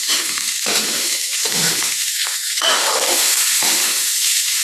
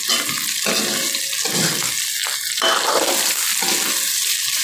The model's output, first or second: first